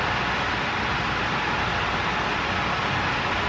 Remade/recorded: recorded